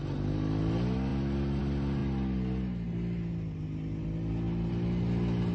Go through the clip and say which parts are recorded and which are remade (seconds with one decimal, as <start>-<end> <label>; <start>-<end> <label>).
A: 0.0-5.5 recorded